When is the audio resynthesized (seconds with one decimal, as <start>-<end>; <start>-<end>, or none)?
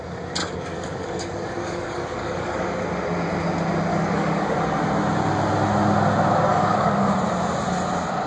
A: 0.4-2.8; 3.9-4.5; 6.5-7.1